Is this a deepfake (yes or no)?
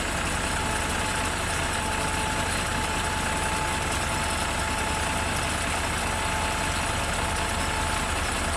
no